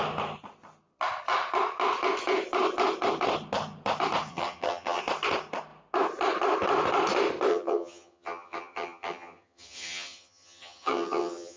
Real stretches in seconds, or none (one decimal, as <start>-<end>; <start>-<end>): 0.0-4.3; 5.0-7.5